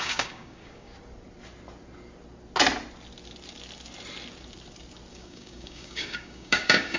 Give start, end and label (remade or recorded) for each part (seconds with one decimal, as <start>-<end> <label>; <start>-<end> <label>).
0.0-0.9 remade; 0.9-5.1 recorded; 5.1-7.0 remade